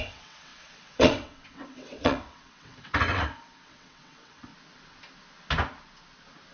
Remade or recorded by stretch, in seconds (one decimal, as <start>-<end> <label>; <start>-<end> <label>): 0.0-4.5 remade; 4.5-6.5 recorded